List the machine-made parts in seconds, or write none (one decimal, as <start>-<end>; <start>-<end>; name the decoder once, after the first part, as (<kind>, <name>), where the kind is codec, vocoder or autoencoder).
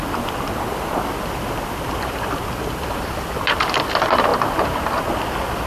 4.3-5.1 (vocoder, BigVGAN v2)